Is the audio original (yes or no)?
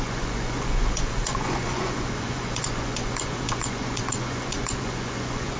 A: no